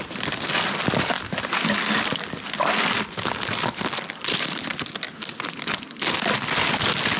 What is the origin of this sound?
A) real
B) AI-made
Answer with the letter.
A